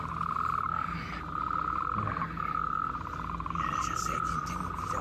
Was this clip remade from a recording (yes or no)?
no